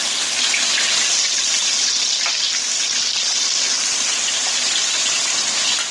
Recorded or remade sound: recorded